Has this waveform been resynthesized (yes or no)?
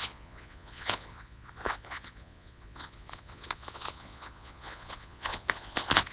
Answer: yes